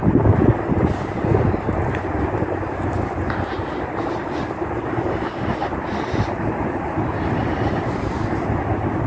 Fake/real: real